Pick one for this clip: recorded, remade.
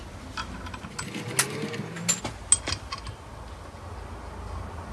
recorded